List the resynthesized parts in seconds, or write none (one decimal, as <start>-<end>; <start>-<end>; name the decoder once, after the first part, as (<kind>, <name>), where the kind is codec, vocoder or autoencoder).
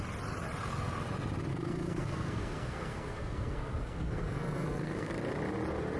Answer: 1.5-5.1 (codec, SNAC)